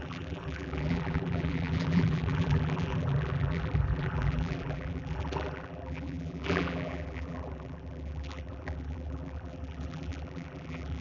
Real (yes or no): no